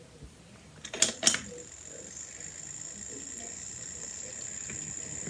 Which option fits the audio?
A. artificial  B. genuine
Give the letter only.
B